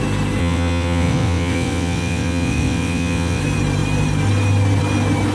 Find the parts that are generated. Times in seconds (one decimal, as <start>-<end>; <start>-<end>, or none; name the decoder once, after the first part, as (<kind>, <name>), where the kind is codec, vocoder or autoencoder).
0.4-3.4 (vocoder, WaveNeXt)